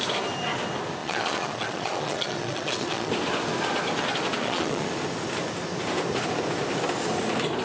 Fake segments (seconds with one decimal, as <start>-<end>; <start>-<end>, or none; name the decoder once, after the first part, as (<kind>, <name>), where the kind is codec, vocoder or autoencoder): 1.0-3.1 (vocoder, Vocos); 4.4-4.9

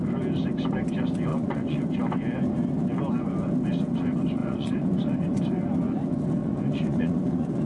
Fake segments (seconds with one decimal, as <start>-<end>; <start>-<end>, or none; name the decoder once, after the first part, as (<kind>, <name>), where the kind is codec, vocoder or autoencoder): 1.3-1.9 (vocoder, Vocos); 4.4-5.4; 6.4-7.7

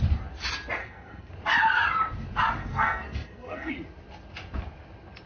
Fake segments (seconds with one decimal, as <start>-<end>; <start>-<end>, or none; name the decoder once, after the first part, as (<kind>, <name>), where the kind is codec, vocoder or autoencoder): 0.8-1.3 (codec, SNAC); 2.6-3.7

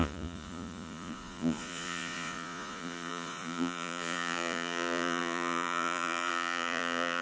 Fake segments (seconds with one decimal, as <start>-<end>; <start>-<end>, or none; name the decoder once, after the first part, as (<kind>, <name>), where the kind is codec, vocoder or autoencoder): 0.0-7.2 (vocoder, Vocos)

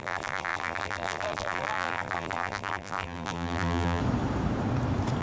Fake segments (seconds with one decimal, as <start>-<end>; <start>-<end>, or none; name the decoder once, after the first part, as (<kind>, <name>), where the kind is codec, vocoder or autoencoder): 0.0-4.0 (vocoder, BigVGAN v2)

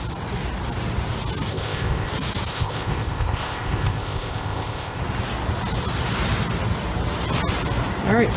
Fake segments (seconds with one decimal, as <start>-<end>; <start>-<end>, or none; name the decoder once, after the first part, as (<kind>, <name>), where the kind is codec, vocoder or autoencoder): 1.5-2.1 (codec, ZipCodec); 2.5-5.0

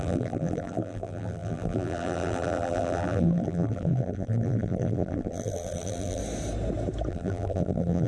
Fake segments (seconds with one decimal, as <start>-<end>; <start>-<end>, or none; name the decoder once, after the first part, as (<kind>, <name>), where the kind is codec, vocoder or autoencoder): 0.0-6.2 (vocoder, BigVGAN v2); 7.1-8.1

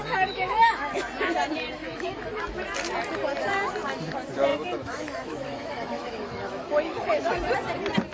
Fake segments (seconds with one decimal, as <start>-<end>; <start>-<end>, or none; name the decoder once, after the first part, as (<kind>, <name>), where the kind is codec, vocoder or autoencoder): 0.0-0.9 (autoencoder, DAC-VAE); 1.8-2.4; 4.5-7.3